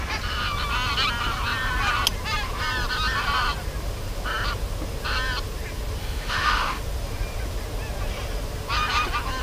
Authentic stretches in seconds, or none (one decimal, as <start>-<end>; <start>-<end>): 0.0-6.0; 6.8-9.4